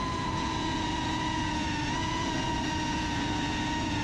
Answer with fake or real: fake